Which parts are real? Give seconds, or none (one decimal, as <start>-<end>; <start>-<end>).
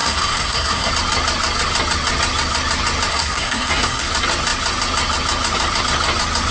0.9-3.1; 4.1-6.5